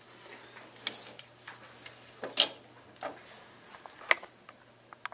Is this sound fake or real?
real